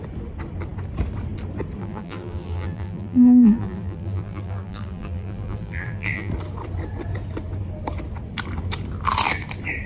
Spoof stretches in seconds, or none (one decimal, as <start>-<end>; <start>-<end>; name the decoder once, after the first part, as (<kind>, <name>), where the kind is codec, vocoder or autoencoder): 1.8-6.3 (vocoder, BigVGAN v2)